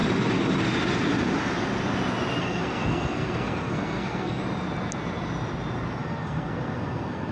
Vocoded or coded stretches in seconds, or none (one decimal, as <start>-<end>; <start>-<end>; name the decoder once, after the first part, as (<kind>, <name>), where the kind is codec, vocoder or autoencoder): 2.4-4.4 (codec, SNAC); 6.0-7.3